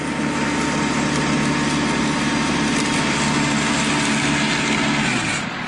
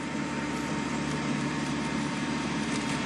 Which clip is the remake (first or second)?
second